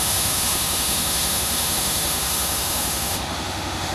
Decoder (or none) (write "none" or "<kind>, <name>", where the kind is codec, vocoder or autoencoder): autoencoder, DAC-VAE